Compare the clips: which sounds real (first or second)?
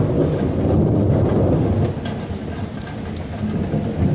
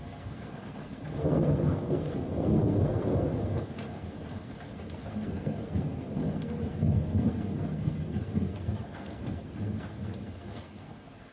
first